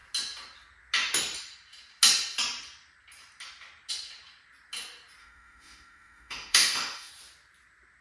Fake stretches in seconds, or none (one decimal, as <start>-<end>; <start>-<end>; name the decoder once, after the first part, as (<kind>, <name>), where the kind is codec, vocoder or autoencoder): 5.2-7.1 (autoencoder, DAC-VAE)